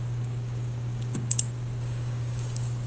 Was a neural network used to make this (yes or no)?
yes